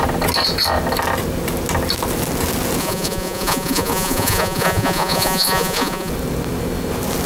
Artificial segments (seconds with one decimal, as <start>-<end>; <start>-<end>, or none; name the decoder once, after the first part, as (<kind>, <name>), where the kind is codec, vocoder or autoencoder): 2.8-6.1 (vocoder, Vocos)